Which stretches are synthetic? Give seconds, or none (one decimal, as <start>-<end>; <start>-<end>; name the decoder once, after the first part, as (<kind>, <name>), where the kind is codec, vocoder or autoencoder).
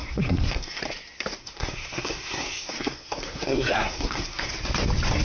0.0-0.8 (codec, SNAC); 1.4-4.5